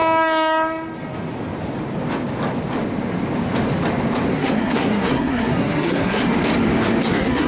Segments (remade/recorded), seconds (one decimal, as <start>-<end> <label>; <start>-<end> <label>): 0.0-4.3 recorded; 4.3-6.2 remade; 6.2-7.0 recorded; 7.0-7.5 remade